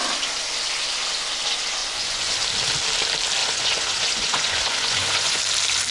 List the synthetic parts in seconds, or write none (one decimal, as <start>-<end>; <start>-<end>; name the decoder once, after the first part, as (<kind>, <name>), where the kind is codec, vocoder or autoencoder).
1.8-2.3 (vocoder, Vocos); 3.4-5.4